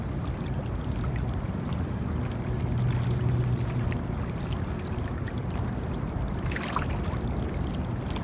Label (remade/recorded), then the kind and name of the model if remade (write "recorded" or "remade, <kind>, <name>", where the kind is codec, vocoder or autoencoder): recorded